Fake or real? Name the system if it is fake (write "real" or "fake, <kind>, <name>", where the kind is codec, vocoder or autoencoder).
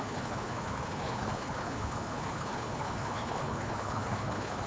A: fake, codec, HILCodec